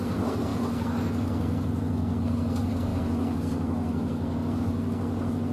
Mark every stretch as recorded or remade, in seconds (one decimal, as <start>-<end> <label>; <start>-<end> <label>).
0.0-5.5 remade